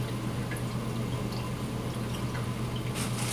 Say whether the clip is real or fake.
real